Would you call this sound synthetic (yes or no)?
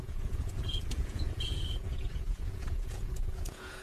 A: yes